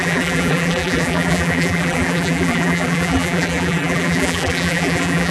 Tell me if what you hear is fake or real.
fake